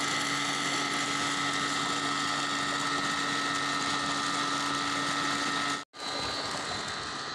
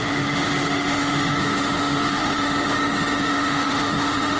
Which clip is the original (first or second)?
first